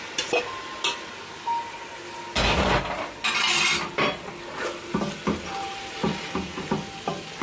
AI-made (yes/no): no